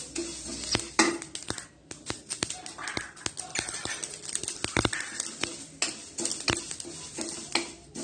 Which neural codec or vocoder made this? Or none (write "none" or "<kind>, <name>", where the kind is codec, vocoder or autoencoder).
none